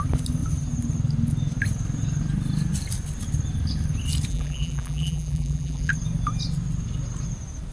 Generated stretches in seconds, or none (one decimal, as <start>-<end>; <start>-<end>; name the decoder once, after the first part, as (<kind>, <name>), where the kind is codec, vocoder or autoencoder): 4.3-5.9 (vocoder, BigVGAN v2)